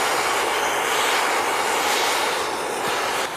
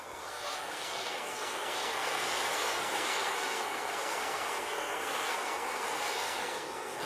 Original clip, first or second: first